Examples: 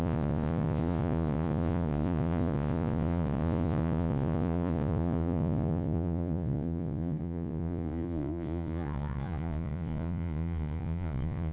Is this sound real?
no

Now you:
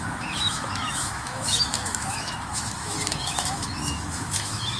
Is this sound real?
no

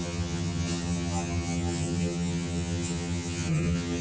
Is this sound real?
no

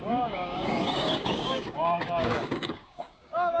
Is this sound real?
no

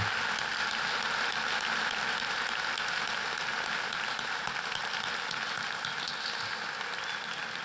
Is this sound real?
yes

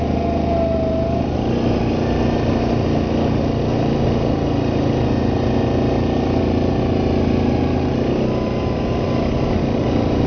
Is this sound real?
yes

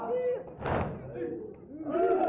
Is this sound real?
yes